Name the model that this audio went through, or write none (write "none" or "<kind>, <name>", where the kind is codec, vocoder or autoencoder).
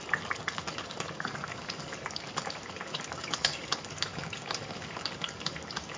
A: codec, DAC